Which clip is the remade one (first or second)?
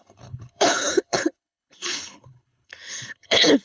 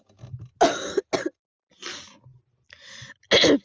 first